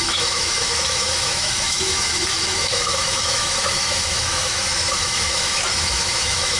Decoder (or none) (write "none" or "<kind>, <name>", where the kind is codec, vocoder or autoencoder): autoencoder, DAC-VAE